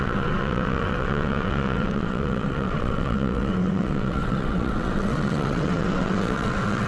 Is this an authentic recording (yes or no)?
no